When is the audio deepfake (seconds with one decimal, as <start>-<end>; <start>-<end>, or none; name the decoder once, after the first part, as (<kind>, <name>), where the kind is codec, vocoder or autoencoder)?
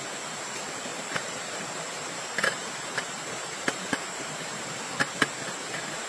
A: 0.9-4.6 (vocoder, BigVGAN v2)